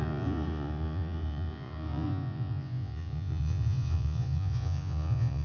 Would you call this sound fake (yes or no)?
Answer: yes